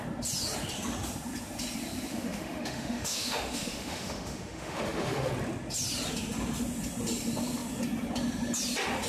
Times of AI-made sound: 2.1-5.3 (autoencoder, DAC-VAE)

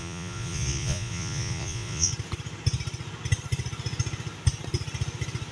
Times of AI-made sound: 0.0-2.1 (vocoder, Vocos)

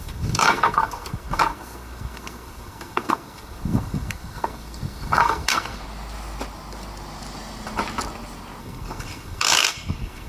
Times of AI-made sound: 0.0-5.8 (codec, SNAC); 8.6-10.3